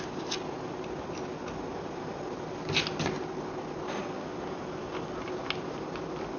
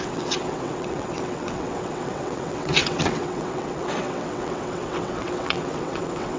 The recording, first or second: first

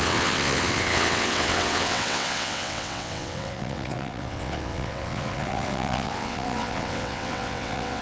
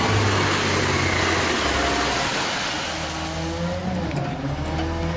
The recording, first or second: second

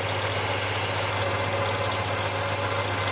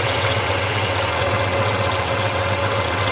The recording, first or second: first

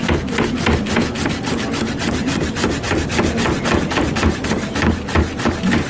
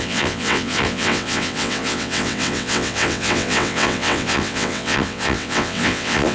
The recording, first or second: first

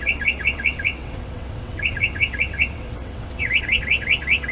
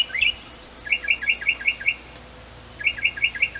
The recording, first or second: second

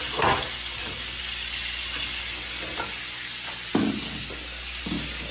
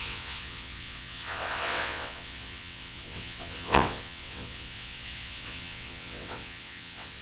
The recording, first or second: first